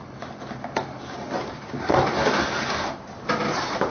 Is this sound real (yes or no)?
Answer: yes